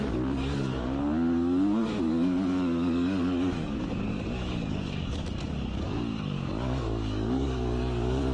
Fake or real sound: fake